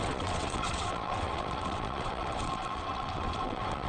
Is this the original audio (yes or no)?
no